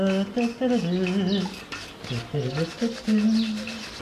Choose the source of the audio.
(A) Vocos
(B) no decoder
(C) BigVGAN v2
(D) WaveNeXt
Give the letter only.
B